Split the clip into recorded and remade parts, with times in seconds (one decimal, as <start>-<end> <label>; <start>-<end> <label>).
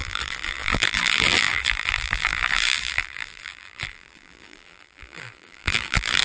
0.0-6.2 remade